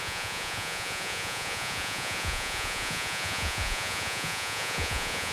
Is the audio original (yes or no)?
no